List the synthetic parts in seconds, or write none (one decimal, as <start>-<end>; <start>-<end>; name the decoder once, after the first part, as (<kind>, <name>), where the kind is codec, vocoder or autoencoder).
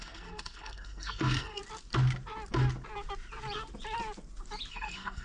0.0-1.6 (codec, SNAC); 4.7-5.2